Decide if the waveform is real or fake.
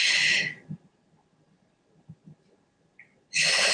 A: real